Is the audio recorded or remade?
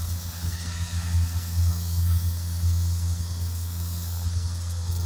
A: remade